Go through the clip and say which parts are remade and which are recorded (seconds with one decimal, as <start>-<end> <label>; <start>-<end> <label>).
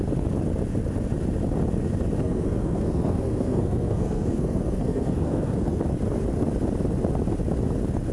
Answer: 0.0-2.2 recorded; 2.2-5.8 remade; 5.8-8.1 recorded